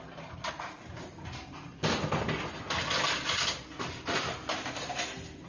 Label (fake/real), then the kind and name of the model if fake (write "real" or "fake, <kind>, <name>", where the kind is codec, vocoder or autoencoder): real